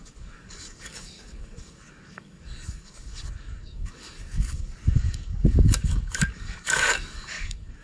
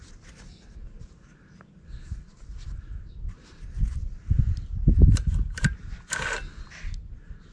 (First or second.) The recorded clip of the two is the second